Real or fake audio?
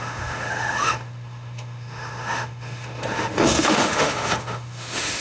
fake